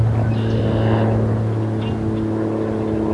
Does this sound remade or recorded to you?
recorded